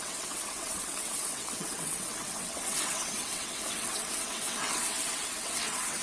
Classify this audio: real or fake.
fake